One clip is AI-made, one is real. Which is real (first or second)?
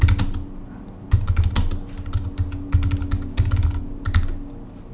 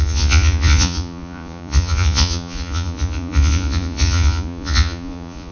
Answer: first